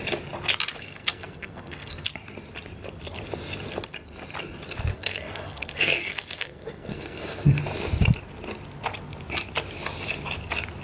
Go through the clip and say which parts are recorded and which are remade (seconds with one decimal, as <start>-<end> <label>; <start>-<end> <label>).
0.0-0.7 recorded; 0.7-2.1 remade; 2.1-4.9 recorded; 4.9-7.6 remade; 7.6-10.8 recorded